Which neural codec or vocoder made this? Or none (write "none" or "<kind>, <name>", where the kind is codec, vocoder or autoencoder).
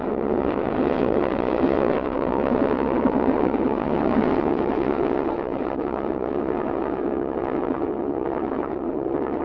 vocoder, WaveNeXt